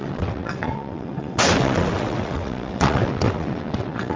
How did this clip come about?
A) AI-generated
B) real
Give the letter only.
A